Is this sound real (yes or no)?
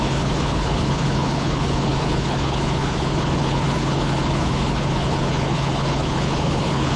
no